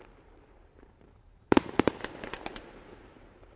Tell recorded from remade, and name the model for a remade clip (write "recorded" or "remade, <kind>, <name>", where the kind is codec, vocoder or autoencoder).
remade, vocoder, BigVGAN v2